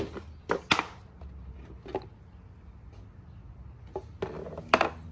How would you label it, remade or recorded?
recorded